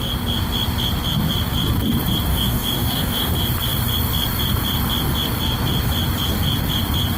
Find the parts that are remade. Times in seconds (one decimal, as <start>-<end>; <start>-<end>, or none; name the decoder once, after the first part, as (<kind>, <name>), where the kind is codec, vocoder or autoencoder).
2.3-3.3 (codec, DAC)